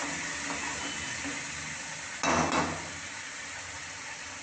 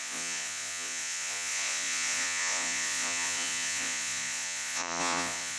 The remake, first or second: second